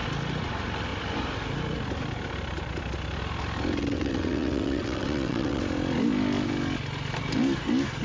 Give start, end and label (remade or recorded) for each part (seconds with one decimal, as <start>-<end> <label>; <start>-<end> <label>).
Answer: 0.0-3.8 recorded; 3.8-5.6 remade; 5.6-8.0 recorded